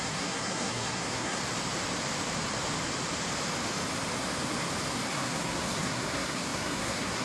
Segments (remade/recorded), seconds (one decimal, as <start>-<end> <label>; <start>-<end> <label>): 0.0-1.4 remade; 1.4-5.1 recorded; 5.1-7.2 remade